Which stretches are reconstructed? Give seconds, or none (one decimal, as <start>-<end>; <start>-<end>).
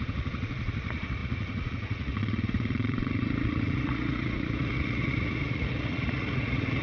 0.0-6.8